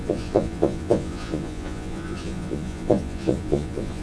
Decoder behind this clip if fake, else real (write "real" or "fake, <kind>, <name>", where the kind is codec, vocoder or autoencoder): fake, vocoder, Vocos